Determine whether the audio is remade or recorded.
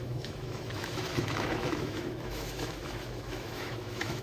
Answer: remade